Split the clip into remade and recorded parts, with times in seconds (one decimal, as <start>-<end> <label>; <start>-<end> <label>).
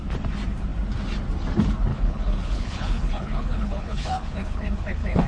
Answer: 0.0-1.9 recorded; 1.9-5.3 remade